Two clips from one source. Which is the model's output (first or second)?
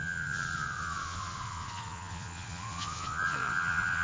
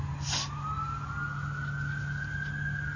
first